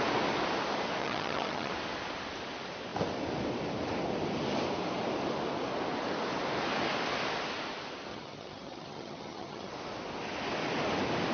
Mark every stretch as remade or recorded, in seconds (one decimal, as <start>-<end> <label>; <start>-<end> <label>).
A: 0.0-1.0 recorded; 1.0-1.7 remade; 1.7-8.1 recorded; 8.1-9.7 remade; 9.7-11.3 recorded